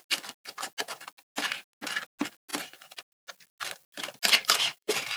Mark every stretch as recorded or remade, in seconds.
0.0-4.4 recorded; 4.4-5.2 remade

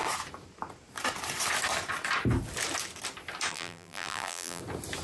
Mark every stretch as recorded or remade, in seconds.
0.0-3.5 recorded; 3.5-4.6 remade; 4.6-5.0 recorded

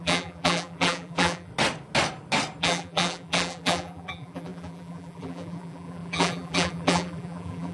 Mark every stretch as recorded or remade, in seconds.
0.0-1.5 remade; 1.5-2.6 recorded; 2.6-7.7 remade

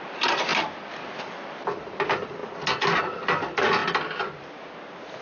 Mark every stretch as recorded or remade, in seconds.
0.0-0.5 recorded; 0.5-1.2 remade; 1.2-5.2 recorded

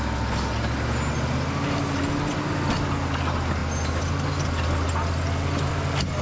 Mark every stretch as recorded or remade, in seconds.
0.0-6.2 recorded

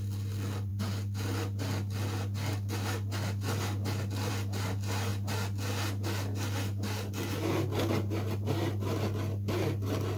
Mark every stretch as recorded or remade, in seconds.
0.0-10.2 recorded

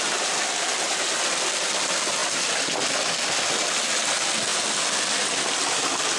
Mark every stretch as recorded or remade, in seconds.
0.0-6.2 recorded